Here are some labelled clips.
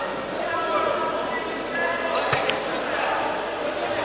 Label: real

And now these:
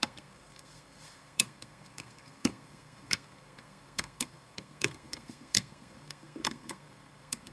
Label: fake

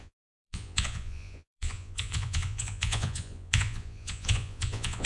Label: fake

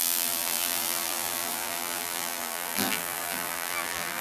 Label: fake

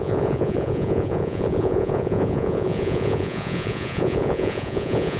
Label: fake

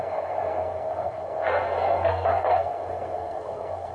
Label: fake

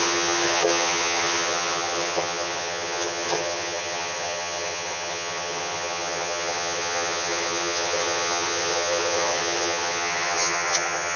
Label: fake